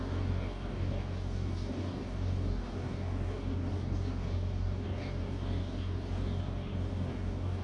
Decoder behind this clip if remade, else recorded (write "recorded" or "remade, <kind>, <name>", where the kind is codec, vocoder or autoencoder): remade, codec, DAC